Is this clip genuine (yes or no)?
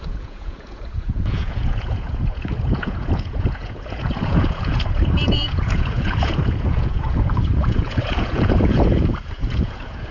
no